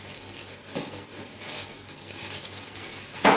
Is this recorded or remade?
remade